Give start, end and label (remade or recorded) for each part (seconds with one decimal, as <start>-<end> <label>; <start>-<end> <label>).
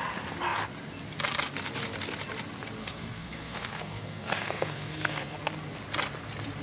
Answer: 0.0-2.8 recorded; 2.8-5.4 remade; 5.4-6.6 recorded